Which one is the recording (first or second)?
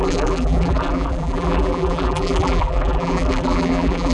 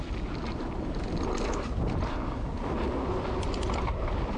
second